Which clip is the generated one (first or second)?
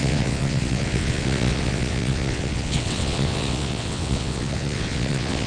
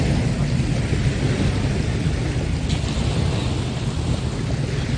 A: first